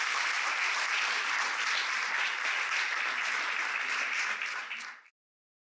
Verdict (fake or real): real